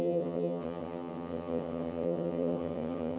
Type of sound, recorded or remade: remade